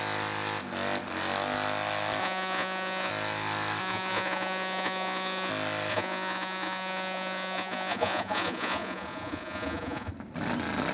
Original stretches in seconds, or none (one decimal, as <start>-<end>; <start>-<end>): 0.0-2.2; 3.1-3.8; 5.5-5.9; 10.1-10.9